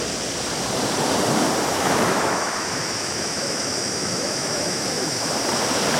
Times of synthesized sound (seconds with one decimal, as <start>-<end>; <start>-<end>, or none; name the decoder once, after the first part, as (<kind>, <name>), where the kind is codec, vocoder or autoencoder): 1.7-5.3 (autoencoder, DAC-VAE)

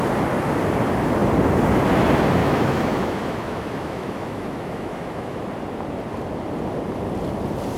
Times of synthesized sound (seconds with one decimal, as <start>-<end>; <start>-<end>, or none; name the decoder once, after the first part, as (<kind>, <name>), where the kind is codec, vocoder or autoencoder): 2.4-5.4 (autoencoder, DAC-VAE)